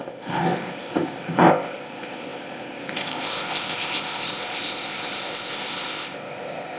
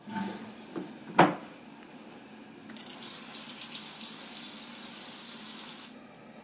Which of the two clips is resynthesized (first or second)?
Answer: first